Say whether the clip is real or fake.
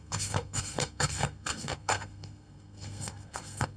fake